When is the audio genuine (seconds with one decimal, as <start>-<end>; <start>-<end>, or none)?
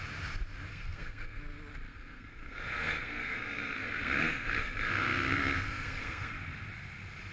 0.0-0.7; 1.4-1.9; 6.3-7.3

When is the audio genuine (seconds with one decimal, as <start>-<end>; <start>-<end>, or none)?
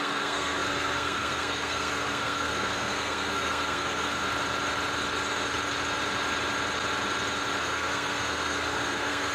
4.2-7.6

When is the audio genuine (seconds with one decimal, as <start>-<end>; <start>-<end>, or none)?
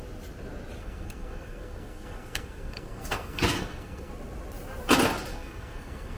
0.0-0.8; 4.1-5.3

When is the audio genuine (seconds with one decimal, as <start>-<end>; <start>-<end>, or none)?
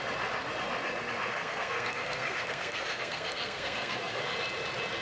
0.0-1.3; 4.2-5.0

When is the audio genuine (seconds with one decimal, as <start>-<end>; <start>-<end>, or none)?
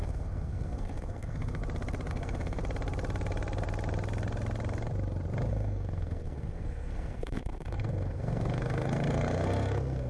1.6-2.1; 2.6-5.5